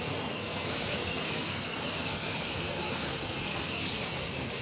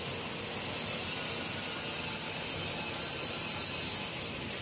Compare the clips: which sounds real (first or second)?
second